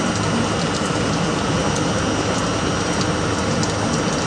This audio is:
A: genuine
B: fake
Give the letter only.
A